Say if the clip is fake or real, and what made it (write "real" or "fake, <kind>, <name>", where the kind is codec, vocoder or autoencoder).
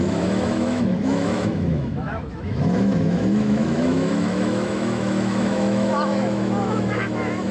fake, autoencoder, DAC-VAE